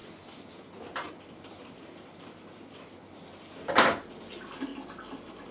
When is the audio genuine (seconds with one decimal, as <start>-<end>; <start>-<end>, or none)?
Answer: 0.0-5.5